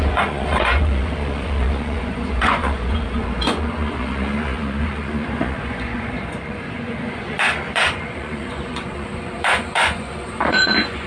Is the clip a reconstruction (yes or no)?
yes